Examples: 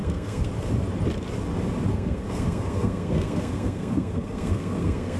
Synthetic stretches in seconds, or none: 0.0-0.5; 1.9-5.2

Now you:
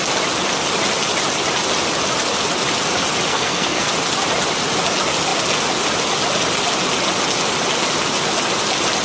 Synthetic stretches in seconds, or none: 3.3-3.9

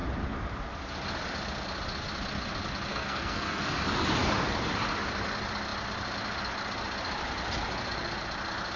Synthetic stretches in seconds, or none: 2.9-3.6

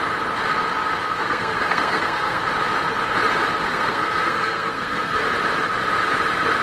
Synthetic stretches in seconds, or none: 1.1-2.4; 3.7-5.2

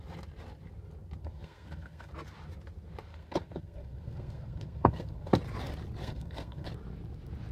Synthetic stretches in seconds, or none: 1.2-2.1; 3.1-5.3; 6.0-6.7

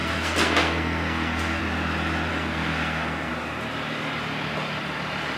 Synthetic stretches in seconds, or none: 0.0-1.6; 2.3-3.3

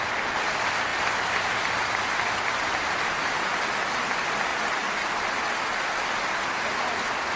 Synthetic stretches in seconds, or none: none